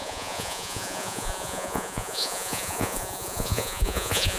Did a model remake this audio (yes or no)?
yes